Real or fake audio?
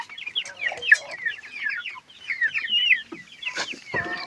real